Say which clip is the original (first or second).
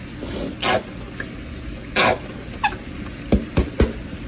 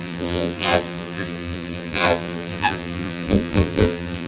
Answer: first